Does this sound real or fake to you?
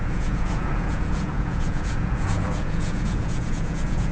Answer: fake